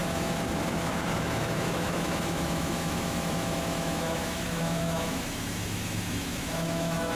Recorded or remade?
remade